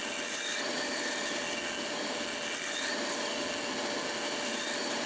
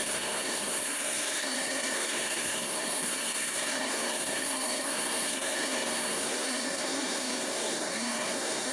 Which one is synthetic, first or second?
second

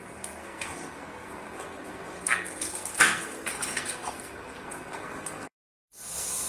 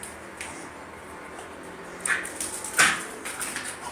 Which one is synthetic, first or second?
first